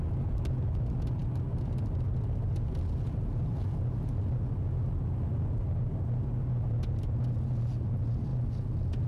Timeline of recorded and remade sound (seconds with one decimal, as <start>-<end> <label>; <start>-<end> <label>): 0.0-9.1 recorded